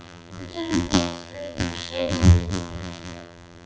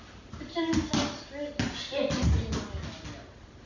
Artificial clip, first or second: first